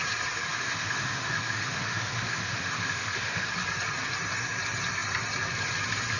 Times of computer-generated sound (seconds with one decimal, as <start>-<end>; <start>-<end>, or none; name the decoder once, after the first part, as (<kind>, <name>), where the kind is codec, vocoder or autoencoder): 0.5-3.5 (autoencoder, DAC-VAE)